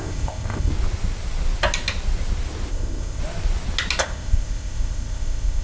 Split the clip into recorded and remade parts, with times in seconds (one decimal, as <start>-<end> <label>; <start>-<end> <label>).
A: 0.0-0.7 remade; 0.7-2.7 recorded; 2.7-3.2 remade; 3.2-4.0 recorded; 4.0-5.6 remade